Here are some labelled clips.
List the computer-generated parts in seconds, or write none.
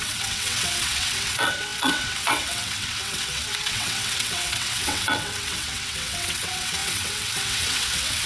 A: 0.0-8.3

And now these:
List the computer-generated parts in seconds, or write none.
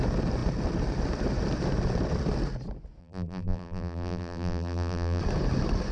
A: 3.0-5.2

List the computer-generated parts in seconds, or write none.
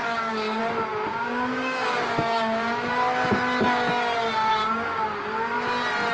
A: 0.0-0.6; 1.1-2.9; 4.5-5.1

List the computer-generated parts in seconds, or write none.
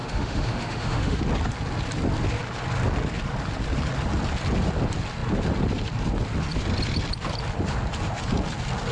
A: 0.0-1.2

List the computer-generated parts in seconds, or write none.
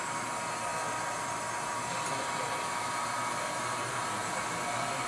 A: none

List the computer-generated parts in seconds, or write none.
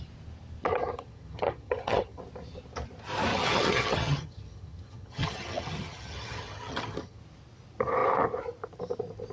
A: 0.7-2.2; 3.3-7.2